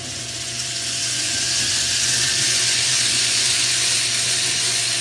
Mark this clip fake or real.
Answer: fake